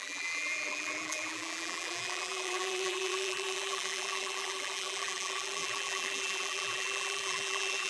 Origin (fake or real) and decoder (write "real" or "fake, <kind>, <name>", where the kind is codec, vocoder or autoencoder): fake, vocoder, BigVGAN v2